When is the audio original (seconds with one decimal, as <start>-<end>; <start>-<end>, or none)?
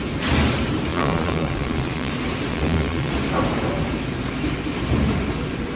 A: 0.0-0.9; 2.1-2.5; 3.1-5.8